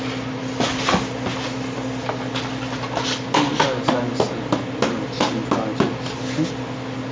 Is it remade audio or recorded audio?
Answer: recorded